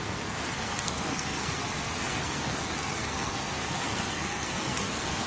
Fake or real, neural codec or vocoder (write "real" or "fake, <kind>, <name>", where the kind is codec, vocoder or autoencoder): fake, codec, SNAC